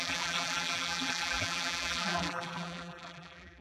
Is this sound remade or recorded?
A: remade